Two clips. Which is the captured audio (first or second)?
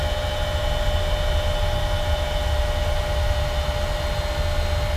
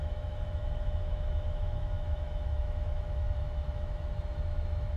first